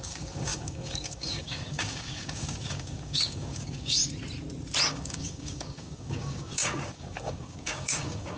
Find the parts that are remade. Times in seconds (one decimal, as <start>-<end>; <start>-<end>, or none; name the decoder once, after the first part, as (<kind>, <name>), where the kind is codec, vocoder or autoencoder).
0.0-4.0 (codec, DAC); 4.9-8.4